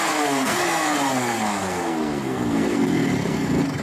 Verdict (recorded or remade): remade